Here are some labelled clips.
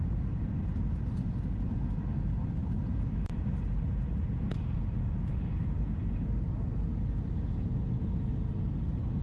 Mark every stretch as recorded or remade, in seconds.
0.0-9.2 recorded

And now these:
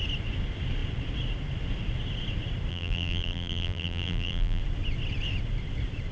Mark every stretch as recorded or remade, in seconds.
0.0-2.7 recorded; 2.7-4.6 remade; 4.6-6.1 recorded

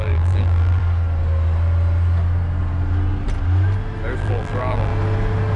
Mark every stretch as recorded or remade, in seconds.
0.0-0.8 remade; 0.8-4.2 recorded; 4.2-4.9 remade; 4.9-5.6 recorded

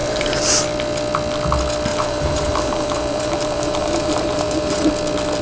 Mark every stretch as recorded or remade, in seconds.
0.0-0.5 remade; 0.5-1.9 recorded; 1.9-4.9 remade; 4.9-5.4 recorded

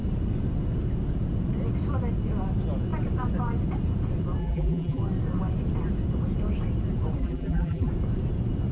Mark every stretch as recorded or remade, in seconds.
0.0-4.4 recorded; 4.4-5.0 remade; 5.0-7.2 recorded; 7.2-7.9 remade; 7.9-8.7 recorded

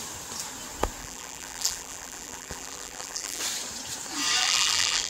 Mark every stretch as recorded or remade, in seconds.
0.0-1.0 recorded; 1.0-3.4 remade; 3.4-4.4 recorded; 4.4-5.1 remade